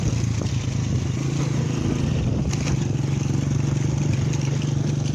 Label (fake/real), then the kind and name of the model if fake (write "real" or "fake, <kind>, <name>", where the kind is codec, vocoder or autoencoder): real